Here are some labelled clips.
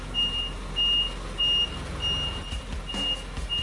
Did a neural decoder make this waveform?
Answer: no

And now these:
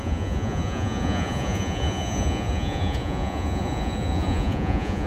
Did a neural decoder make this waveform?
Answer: yes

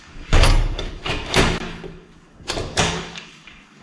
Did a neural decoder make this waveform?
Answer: yes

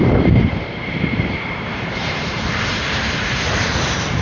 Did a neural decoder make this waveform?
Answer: yes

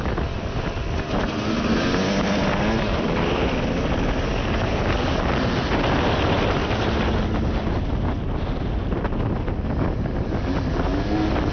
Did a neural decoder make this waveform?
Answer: no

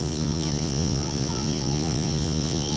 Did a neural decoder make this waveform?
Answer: yes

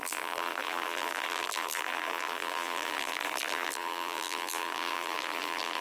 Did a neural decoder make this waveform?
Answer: yes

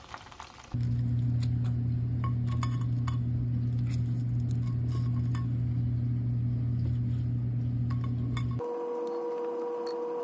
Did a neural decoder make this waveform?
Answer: no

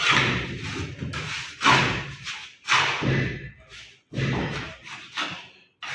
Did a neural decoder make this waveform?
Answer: no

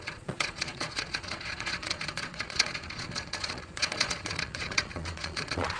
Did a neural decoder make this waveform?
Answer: yes